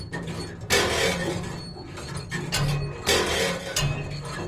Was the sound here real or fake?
real